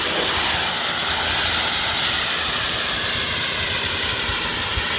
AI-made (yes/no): no